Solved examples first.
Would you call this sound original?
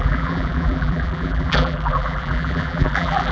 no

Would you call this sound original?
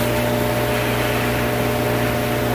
no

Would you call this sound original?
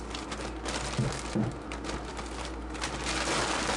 yes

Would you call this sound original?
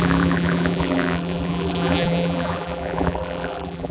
no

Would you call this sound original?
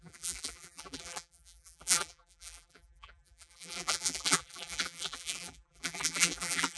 no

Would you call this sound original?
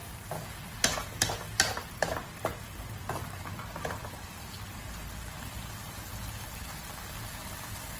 yes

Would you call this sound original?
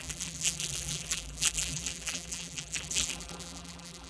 no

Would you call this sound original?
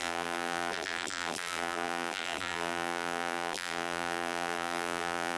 no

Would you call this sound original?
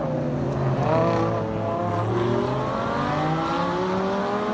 yes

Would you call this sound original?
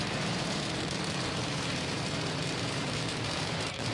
no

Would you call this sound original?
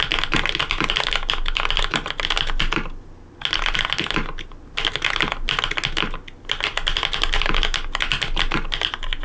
yes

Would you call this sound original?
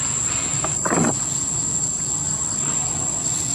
yes